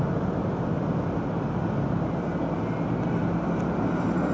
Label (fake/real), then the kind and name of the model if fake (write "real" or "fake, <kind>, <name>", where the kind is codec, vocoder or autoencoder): real